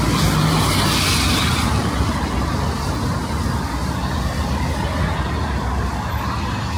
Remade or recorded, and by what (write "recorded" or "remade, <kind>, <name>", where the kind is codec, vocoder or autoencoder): recorded